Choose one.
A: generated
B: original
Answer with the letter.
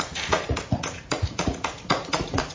A